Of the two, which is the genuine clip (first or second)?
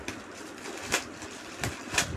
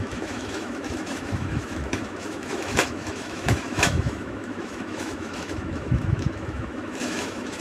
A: first